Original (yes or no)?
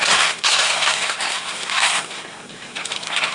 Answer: no